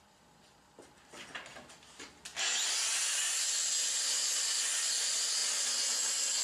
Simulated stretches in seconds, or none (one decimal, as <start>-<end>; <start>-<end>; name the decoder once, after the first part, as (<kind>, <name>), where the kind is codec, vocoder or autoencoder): none